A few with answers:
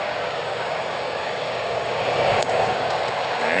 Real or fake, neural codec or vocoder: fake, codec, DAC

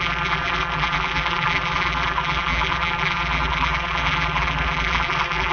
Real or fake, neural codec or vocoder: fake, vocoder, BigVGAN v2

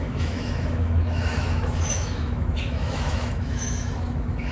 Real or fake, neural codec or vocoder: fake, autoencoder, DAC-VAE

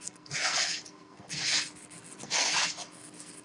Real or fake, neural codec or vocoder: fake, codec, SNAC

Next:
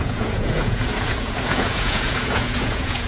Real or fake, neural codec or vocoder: fake, vocoder, Vocos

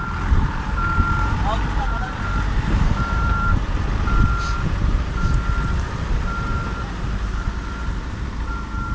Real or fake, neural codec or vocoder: fake, vocoder, BigVGAN v2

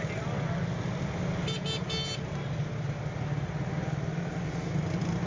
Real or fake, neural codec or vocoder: real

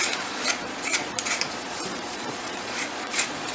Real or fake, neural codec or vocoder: fake, vocoder, Vocos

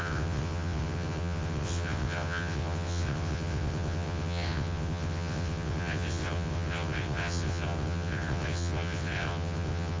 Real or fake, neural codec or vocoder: fake, vocoder, WaveNeXt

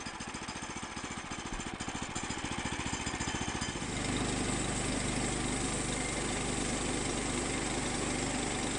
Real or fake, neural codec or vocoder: real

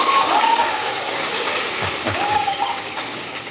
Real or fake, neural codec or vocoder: fake, codec, DAC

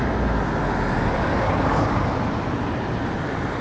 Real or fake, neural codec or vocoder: real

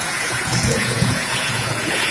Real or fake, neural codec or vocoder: fake, vocoder, Vocos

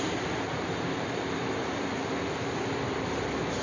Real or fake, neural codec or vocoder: fake, vocoder, BigVGAN v2